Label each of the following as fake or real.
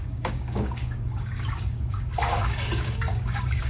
fake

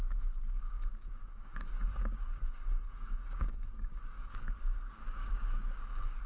fake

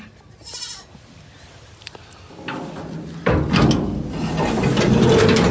real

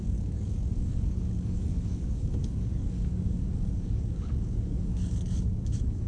fake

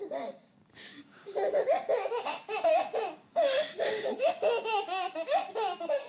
fake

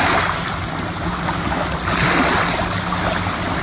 real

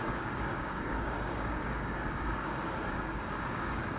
fake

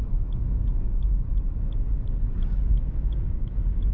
fake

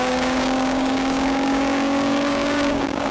fake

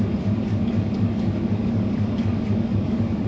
fake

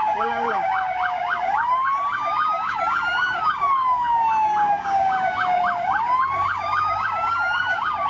fake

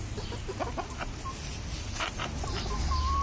real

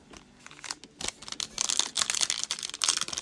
real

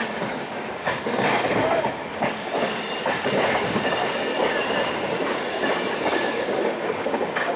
fake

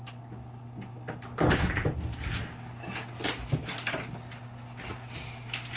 real